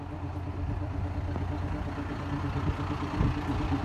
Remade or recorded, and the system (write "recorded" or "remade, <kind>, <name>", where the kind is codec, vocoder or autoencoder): recorded